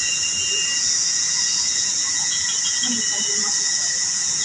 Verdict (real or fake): fake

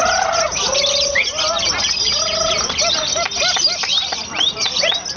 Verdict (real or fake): real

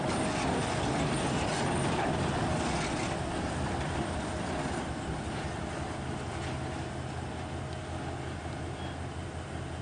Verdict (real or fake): real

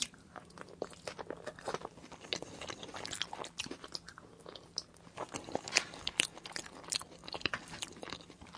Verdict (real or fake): real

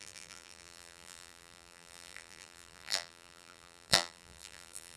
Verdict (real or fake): fake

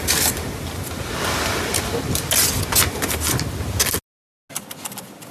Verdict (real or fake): real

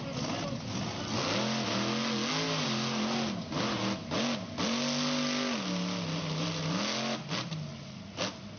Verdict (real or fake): real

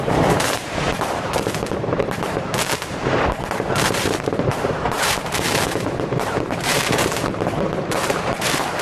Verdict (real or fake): fake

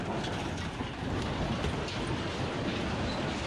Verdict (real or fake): fake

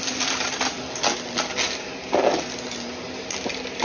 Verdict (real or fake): real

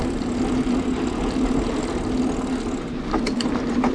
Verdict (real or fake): real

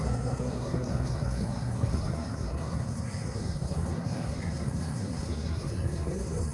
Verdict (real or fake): fake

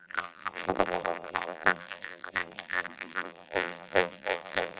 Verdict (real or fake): fake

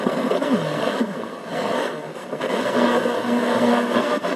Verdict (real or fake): fake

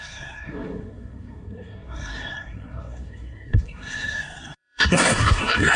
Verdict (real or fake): fake